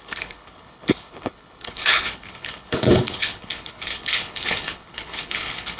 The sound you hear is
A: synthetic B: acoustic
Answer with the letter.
A